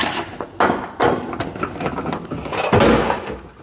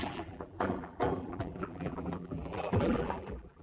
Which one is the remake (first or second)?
second